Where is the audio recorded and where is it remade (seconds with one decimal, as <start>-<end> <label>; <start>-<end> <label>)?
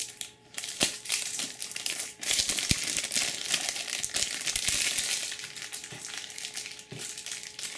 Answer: 0.0-2.4 remade; 2.4-7.8 recorded